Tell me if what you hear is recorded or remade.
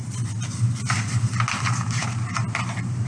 recorded